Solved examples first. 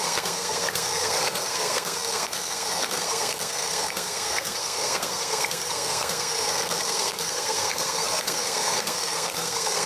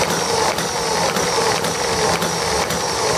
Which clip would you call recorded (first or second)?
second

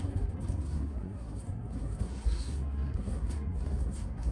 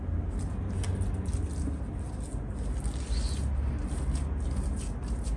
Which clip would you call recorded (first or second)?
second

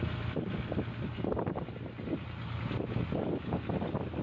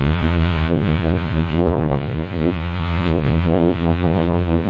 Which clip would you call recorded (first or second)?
first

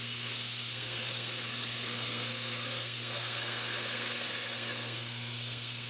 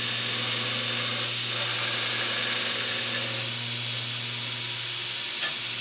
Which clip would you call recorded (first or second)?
second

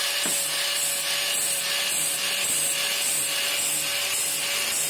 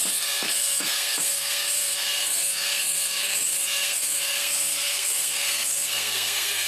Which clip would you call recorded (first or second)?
first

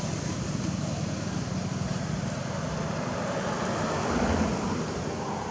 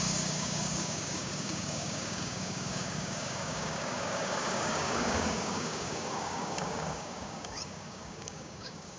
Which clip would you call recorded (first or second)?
first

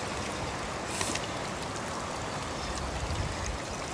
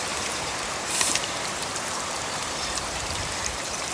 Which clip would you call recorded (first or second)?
first